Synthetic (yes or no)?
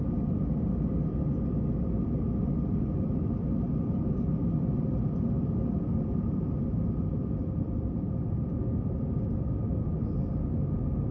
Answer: no